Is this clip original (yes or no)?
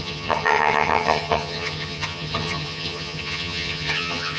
no